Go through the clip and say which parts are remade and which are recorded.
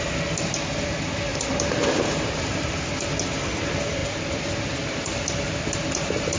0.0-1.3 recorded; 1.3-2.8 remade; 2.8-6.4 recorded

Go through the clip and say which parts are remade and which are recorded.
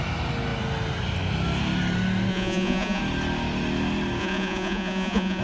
0.0-2.3 recorded; 2.3-3.0 remade; 3.0-4.2 recorded; 4.2-5.4 remade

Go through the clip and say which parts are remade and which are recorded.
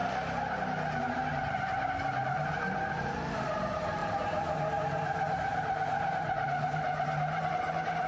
0.0-1.0 recorded; 1.0-8.1 remade